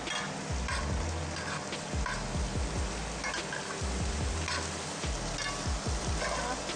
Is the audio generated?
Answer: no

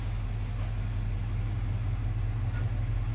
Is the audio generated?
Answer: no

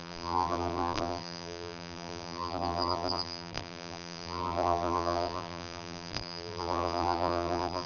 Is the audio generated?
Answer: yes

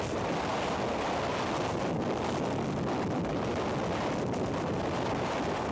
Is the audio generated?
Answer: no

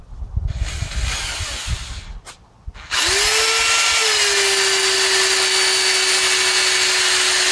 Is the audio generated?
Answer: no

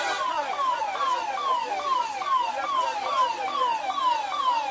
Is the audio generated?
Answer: no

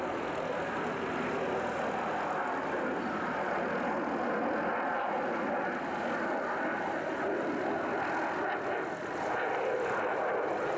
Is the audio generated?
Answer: no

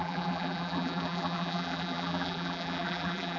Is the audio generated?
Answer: yes